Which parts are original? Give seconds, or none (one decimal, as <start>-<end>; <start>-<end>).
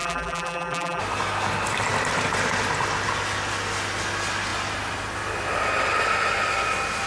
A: 1.0-7.1